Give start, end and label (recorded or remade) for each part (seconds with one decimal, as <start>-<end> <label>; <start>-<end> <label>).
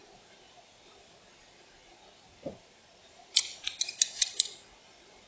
0.0-3.0 recorded; 3.0-3.8 remade; 3.8-5.3 recorded